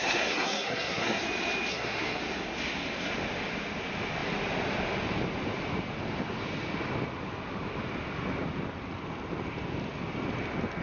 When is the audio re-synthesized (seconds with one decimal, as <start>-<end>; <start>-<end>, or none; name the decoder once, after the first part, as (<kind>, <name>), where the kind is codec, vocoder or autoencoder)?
0.0-1.2 (codec, SNAC); 1.7-2.2